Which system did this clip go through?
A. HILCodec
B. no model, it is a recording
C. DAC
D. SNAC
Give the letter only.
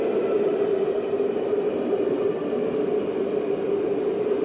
B